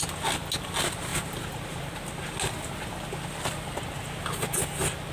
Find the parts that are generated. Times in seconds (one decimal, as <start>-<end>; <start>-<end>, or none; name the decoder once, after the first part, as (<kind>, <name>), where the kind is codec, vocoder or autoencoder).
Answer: none